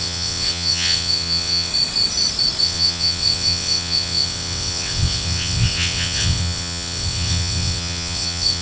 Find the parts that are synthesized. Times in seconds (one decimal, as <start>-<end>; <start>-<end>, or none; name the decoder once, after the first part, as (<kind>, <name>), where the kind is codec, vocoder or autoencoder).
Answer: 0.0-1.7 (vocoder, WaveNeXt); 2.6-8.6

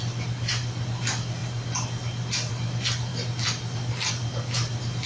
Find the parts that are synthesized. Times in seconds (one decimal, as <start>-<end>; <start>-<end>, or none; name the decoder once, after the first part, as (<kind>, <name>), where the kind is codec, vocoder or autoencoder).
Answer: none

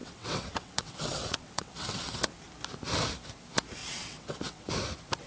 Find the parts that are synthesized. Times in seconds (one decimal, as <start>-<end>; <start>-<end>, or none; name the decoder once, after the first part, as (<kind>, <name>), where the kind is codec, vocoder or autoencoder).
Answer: 0.0-2.3 (vocoder, WaveNeXt); 3.8-4.7

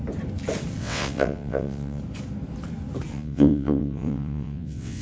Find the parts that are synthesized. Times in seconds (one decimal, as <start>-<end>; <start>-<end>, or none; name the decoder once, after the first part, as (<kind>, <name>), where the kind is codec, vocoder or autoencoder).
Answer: 0.8-2.0 (vocoder, WaveNeXt); 3.1-5.0